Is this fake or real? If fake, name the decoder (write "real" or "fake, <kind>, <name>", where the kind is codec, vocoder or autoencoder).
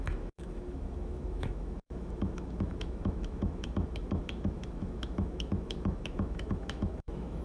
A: fake, autoencoder, DAC-VAE